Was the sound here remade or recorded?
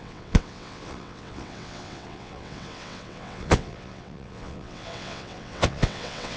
remade